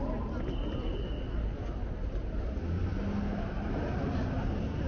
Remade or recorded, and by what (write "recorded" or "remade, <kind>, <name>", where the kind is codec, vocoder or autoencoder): recorded